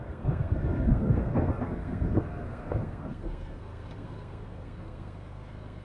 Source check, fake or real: fake